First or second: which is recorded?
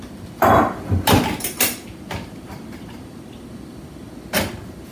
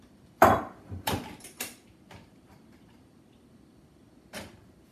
first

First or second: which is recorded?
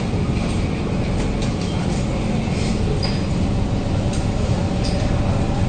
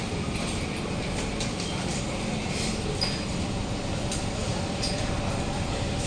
first